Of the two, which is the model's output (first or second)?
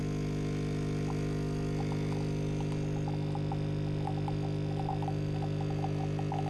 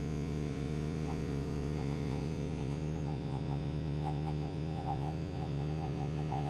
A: second